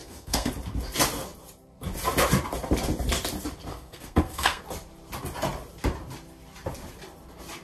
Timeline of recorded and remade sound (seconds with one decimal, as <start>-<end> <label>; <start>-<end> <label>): 0.0-0.5 remade; 0.5-3.7 recorded; 3.7-4.6 remade; 4.6-7.6 recorded